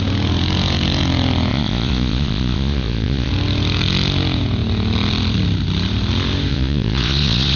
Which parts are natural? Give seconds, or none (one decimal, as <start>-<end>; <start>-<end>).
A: 0.0-1.5; 3.3-6.5